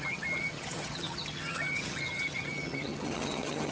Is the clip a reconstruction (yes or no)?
yes